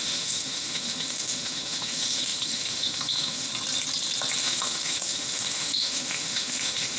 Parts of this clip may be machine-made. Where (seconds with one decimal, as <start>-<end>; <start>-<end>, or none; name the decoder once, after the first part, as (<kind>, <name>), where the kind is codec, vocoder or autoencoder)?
0.0-3.5 (autoencoder, DAC-VAE); 4.4-7.0